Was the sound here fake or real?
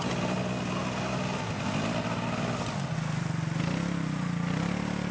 real